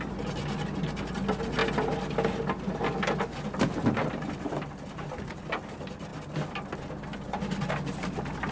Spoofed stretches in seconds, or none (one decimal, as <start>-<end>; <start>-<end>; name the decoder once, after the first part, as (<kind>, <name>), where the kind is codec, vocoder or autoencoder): none